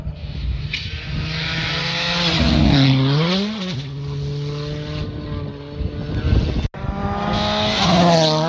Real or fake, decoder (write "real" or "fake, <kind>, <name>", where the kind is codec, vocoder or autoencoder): real